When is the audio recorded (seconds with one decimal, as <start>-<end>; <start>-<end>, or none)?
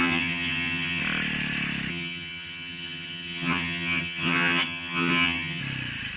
1.0-1.9; 5.6-6.2